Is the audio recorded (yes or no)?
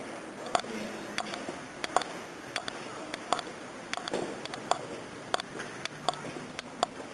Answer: yes